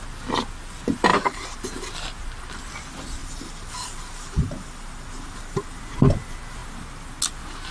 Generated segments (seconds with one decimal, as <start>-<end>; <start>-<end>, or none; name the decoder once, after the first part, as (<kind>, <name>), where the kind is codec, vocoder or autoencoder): 1.1-1.6 (vocoder, BigVGAN v2); 3.2-5.8